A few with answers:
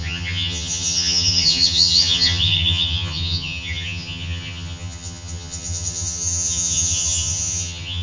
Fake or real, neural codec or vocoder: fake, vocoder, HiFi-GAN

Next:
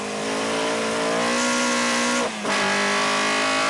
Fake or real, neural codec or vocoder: real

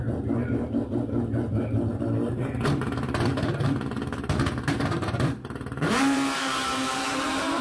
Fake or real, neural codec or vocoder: fake, vocoder, BigVGAN v2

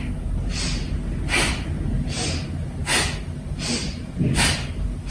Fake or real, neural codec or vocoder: real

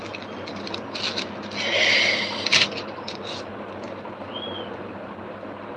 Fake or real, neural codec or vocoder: real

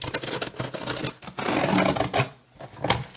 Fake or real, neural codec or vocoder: real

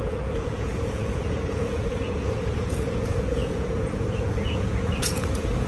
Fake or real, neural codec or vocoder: fake, vocoder, Vocos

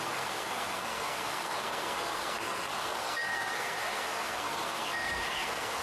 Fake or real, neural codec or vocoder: fake, codec, SNAC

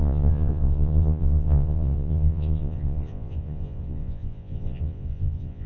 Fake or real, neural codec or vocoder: fake, vocoder, Vocos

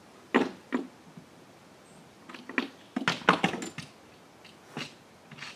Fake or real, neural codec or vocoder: real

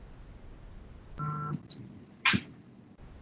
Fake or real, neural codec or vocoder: real